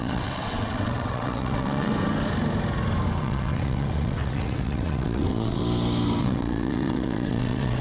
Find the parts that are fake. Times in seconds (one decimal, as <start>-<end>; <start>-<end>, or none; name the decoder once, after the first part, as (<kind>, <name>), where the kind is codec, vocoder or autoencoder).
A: 0.0-1.9 (vocoder, WaveNeXt); 3.2-5.6; 6.2-7.8